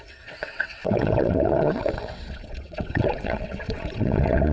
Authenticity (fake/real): fake